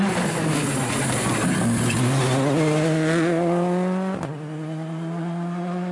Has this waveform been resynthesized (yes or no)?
no